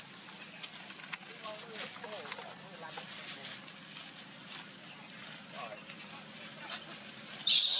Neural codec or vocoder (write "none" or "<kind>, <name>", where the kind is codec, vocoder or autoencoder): none